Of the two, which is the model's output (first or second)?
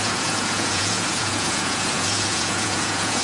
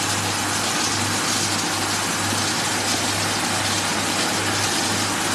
first